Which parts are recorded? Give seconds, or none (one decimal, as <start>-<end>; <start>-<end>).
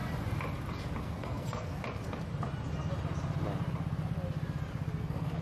0.0-1.0; 1.8-5.0